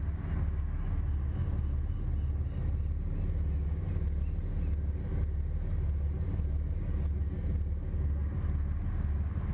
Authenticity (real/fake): real